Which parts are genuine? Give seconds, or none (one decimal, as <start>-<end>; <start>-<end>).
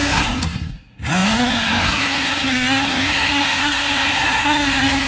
none